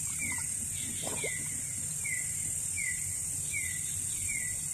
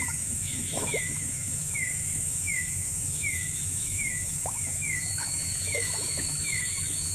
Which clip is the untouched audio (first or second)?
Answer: first